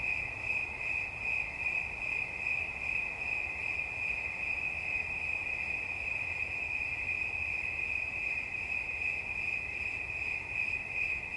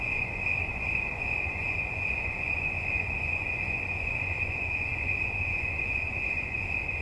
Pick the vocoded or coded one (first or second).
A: second